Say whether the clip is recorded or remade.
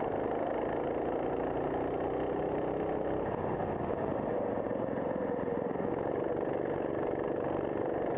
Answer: recorded